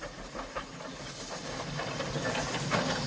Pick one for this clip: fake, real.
real